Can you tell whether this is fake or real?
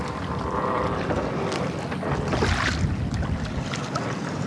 real